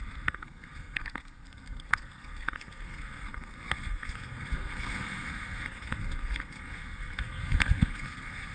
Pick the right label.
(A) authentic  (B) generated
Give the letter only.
B